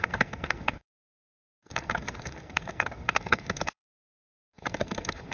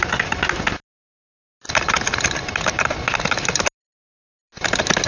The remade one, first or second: first